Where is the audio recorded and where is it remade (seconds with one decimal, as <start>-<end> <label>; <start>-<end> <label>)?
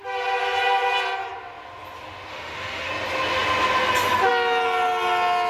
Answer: 0.0-2.3 recorded; 2.3-2.9 remade; 2.9-5.5 recorded